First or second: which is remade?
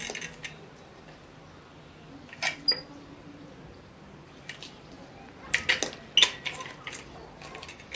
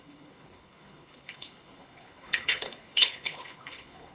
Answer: second